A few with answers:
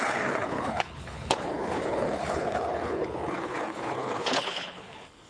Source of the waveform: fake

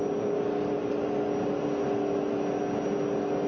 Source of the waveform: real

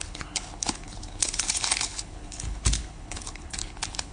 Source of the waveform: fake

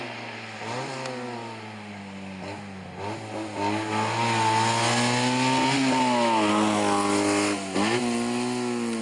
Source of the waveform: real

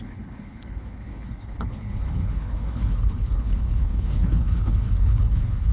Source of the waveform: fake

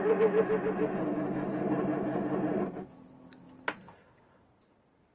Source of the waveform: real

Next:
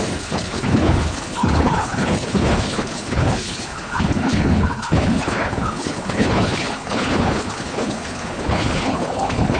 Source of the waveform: fake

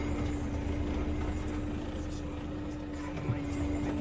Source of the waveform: real